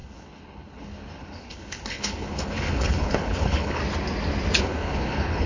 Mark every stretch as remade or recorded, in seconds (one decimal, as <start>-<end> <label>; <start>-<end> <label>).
0.0-3.8 remade; 3.8-4.6 recorded; 4.6-5.5 remade